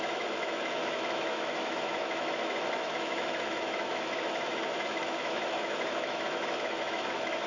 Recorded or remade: remade